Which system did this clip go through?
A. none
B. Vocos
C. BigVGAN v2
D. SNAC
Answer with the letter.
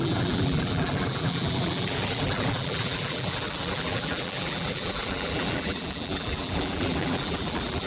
C